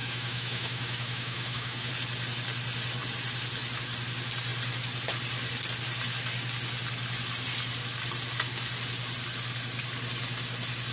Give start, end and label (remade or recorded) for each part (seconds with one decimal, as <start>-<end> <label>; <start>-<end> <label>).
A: 0.0-1.9 remade; 1.9-10.9 recorded